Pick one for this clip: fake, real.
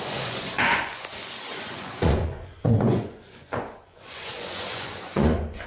fake